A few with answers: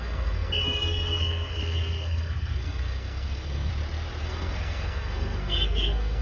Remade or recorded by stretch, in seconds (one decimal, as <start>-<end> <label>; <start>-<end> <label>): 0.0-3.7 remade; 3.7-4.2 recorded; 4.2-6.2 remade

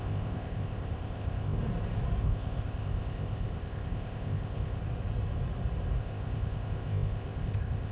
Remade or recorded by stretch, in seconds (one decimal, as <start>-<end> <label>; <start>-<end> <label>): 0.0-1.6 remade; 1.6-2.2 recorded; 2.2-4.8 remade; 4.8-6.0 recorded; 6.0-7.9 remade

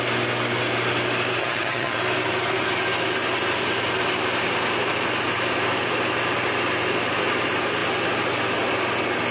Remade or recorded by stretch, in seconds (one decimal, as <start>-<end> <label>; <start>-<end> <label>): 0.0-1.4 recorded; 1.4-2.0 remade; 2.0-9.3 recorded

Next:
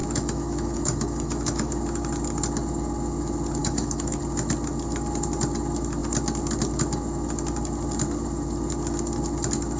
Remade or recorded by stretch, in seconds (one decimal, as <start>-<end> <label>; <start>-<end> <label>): 0.0-1.7 remade; 1.7-3.6 recorded; 3.6-4.2 remade; 4.2-9.8 recorded